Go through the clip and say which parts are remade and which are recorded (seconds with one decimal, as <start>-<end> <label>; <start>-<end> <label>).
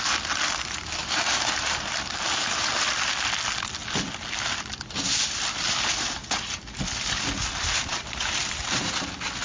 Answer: 0.0-1.0 recorded; 1.0-2.7 remade; 2.7-9.4 recorded